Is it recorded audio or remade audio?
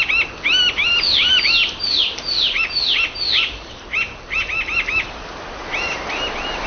recorded